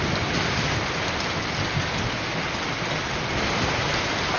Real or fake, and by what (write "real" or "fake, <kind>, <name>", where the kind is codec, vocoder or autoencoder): real